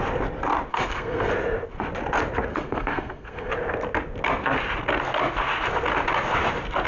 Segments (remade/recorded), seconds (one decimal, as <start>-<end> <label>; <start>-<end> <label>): 0.0-0.7 recorded; 0.7-1.3 remade; 1.3-2.5 recorded; 2.5-3.5 remade; 3.5-6.9 recorded